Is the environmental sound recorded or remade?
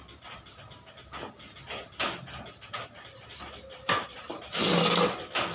recorded